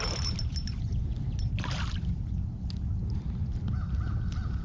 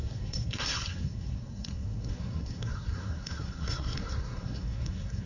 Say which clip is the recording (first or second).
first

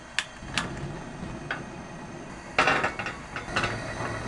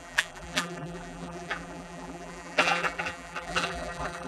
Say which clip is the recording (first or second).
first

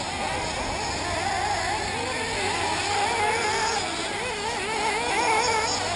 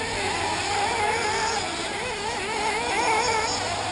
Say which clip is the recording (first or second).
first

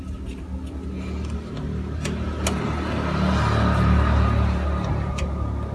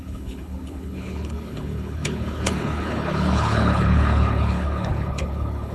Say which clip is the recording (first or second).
first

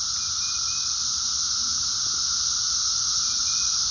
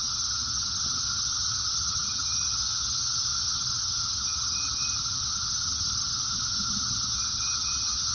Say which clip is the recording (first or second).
first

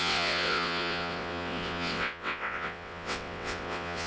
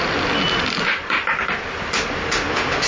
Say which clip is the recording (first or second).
second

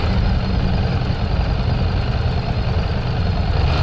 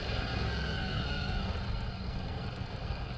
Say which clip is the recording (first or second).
first